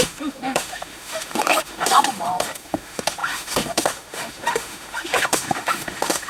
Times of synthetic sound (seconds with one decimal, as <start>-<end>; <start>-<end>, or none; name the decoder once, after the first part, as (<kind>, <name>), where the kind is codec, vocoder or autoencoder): 0.0-6.3 (autoencoder, DAC-VAE)